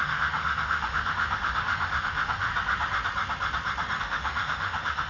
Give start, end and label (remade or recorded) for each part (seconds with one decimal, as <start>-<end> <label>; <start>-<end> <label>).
0.0-2.5 remade; 2.5-4.0 recorded; 4.0-5.1 remade